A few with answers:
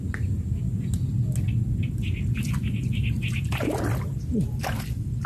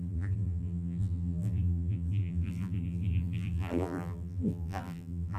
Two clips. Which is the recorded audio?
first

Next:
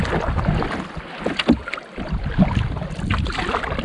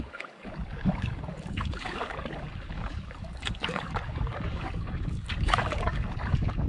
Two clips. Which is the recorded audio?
first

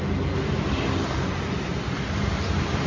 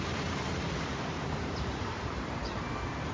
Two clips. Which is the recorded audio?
first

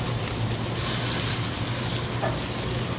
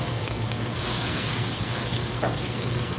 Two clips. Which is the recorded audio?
first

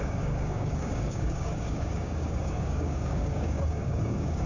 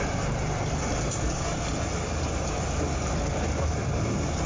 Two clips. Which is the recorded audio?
second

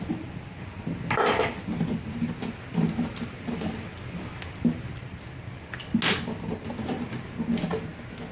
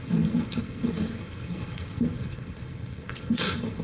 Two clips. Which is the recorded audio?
first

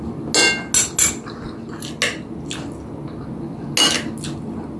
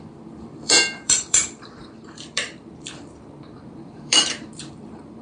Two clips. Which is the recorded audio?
first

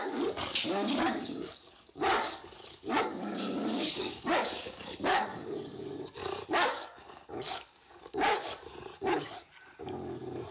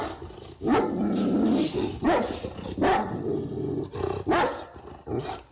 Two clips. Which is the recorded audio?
second